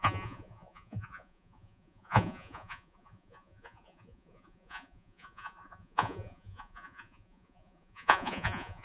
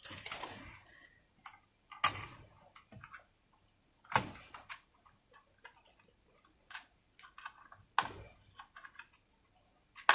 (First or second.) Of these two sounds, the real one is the second